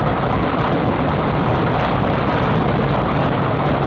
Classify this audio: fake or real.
real